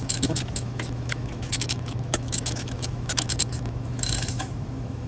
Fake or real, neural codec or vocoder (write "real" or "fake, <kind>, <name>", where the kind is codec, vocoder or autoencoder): fake, autoencoder, DAC-VAE